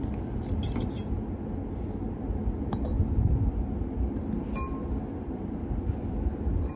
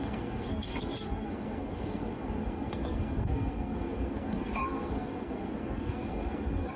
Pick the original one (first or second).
first